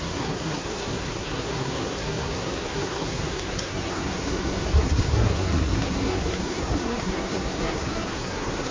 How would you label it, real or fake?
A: fake